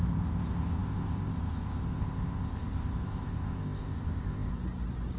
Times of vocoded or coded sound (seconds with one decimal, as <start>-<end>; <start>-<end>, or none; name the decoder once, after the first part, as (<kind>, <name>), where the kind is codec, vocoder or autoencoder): 0.0-4.5 (codec, ZipCodec)

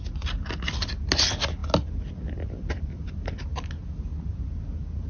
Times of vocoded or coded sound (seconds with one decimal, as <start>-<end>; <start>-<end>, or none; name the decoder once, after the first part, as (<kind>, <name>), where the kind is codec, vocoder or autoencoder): none